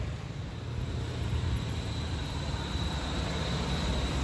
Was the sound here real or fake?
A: fake